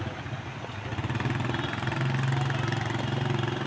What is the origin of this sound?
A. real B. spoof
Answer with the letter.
A